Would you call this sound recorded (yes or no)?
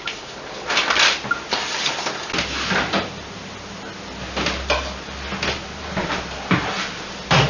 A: yes